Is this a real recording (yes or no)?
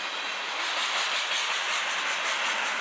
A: yes